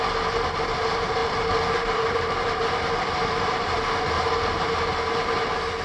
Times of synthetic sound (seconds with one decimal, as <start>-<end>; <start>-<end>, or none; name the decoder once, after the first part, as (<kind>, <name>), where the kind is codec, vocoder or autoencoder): 1.2-4.7 (vocoder, BigVGAN v2)